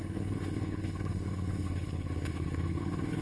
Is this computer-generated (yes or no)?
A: yes